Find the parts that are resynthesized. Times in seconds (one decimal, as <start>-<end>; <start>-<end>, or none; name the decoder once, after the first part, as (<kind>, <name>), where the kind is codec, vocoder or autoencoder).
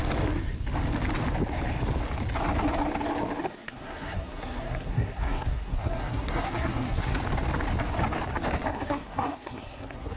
3.4-7.2 (codec, SNAC); 8.7-10.2